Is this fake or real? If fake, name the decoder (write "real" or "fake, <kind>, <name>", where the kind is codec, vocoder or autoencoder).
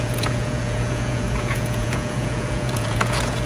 fake, vocoder, Vocos